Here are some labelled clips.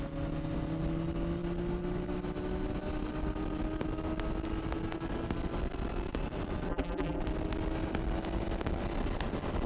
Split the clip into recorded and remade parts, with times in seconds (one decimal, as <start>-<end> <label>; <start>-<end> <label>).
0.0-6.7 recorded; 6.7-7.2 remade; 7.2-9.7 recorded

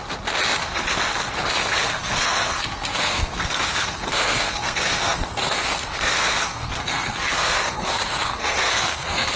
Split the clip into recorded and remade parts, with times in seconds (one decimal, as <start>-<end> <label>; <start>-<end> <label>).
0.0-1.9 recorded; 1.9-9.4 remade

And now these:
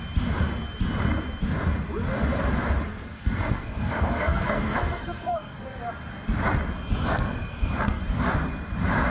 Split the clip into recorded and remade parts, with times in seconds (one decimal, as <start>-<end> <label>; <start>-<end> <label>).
0.0-2.9 recorded; 2.9-5.8 remade; 5.8-7.0 recorded; 7.0-8.0 remade; 8.0-9.1 recorded

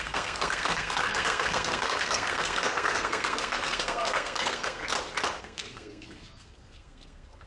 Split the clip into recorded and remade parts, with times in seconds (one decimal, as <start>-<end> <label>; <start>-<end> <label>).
0.0-4.8 remade; 4.8-5.4 recorded; 5.4-7.5 remade

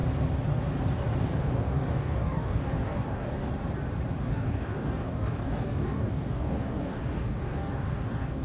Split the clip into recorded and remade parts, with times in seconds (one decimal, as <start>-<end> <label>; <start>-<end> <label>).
0.0-1.2 recorded; 1.2-3.5 remade; 3.5-4.2 recorded; 4.2-8.4 remade

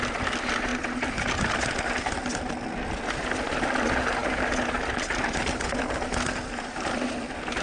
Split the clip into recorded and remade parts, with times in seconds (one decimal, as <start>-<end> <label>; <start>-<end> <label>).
0.0-7.6 recorded

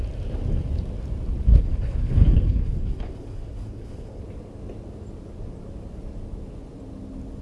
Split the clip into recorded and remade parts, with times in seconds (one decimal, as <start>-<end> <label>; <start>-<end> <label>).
0.0-1.5 recorded; 1.5-4.2 remade; 4.2-7.4 recorded